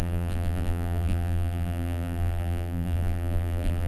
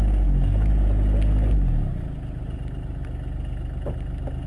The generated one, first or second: first